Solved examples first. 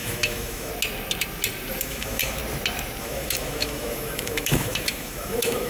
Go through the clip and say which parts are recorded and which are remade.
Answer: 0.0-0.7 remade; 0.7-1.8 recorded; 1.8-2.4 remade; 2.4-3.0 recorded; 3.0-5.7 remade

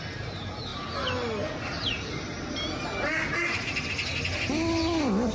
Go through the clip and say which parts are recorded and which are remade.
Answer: 0.0-5.3 recorded

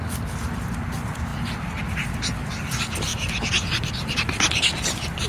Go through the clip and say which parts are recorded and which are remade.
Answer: 0.0-5.3 recorded

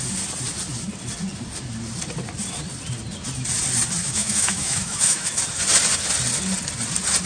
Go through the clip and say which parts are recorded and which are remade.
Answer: 0.0-4.0 recorded; 4.0-5.4 remade; 5.4-7.3 recorded

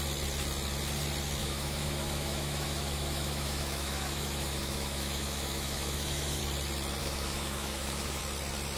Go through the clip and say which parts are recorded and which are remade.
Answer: 0.0-1.4 recorded; 1.4-6.4 remade; 6.4-7.0 recorded; 7.0-8.2 remade; 8.2-8.8 recorded